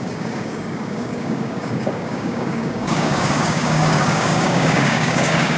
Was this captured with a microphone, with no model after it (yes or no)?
no